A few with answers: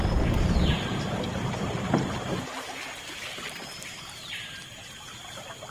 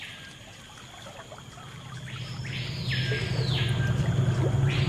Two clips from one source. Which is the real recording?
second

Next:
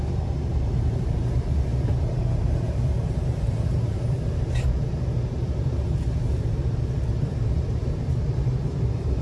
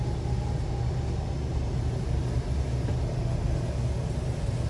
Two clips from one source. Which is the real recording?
second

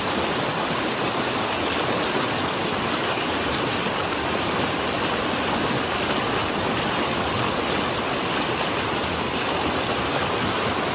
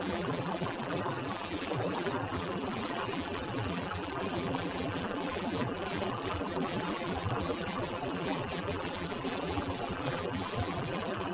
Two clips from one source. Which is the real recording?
first